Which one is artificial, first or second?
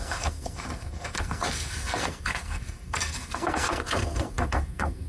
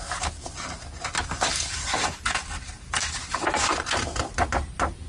first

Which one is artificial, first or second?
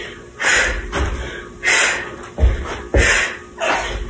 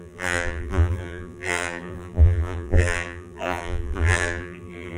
second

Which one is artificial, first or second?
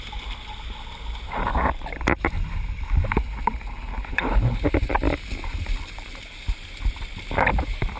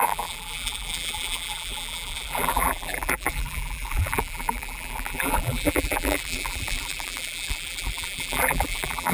second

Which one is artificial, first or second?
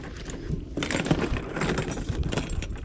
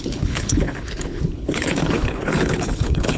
second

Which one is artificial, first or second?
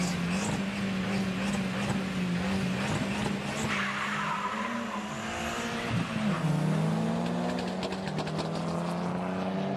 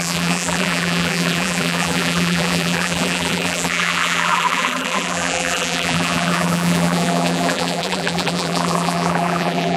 second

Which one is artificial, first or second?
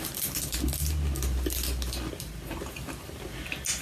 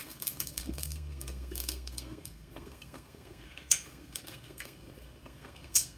second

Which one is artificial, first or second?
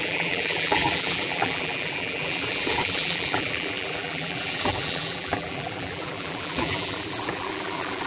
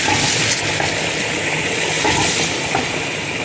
first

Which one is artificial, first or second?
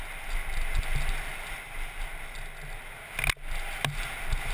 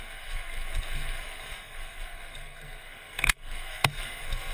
second